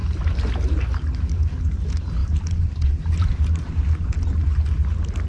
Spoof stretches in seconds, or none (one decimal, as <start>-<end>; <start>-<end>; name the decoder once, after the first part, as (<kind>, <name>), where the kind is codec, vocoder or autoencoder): 2.2-4.1 (vocoder, BigVGAN v2)

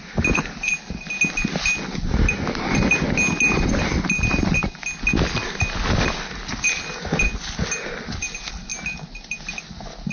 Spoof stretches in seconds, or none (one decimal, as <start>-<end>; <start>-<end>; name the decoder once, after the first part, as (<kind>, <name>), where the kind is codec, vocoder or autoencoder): none

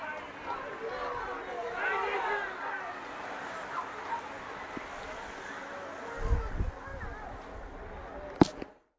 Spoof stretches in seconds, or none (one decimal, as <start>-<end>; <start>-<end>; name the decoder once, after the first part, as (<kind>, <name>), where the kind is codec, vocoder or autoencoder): none

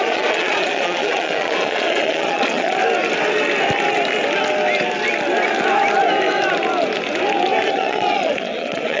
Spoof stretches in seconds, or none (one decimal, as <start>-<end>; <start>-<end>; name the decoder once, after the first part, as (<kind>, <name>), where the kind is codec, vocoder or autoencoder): 0.0-2.8 (vocoder, Vocos); 7.7-9.0

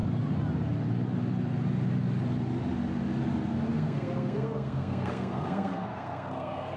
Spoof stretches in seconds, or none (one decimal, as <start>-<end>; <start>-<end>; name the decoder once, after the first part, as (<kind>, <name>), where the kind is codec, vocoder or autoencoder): 3.7-6.8 (codec, SNAC)